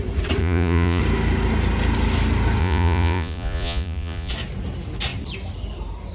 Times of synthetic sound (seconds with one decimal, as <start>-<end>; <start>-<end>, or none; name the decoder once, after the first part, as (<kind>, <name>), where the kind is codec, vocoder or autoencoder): 0.4-1.0 (vocoder, Vocos); 2.6-4.3